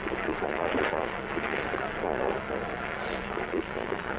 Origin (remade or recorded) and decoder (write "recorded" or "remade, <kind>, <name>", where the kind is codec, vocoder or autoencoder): remade, vocoder, Vocos